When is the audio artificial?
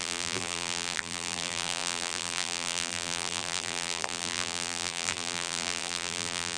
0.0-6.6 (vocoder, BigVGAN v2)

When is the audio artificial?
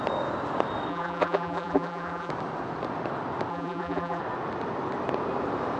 0.9-2.3 (vocoder, BigVGAN v2); 3.5-4.2